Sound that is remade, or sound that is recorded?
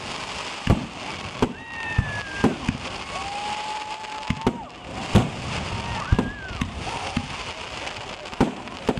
recorded